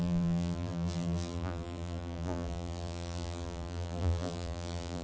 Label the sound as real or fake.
fake